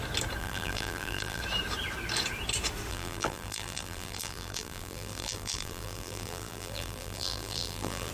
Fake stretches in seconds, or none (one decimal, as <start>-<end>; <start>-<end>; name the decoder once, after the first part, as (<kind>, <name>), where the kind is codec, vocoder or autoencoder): 0.4-1.4 (vocoder, BigVGAN v2); 2.9-8.1

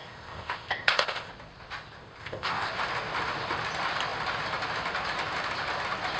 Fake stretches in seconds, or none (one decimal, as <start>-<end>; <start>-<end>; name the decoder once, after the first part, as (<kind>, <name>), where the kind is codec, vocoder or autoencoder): 0.0-1.3 (codec, ZipCodec); 2.2-2.7